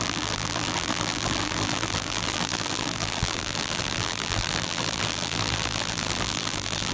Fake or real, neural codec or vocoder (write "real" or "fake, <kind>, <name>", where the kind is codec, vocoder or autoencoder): fake, vocoder, BigVGAN v2